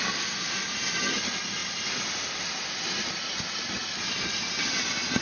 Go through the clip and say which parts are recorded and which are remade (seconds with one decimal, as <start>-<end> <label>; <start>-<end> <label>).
0.0-5.2 recorded